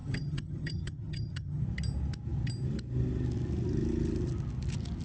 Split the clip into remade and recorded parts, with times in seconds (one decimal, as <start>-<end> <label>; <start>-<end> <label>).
0.0-1.6 remade; 1.6-5.0 recorded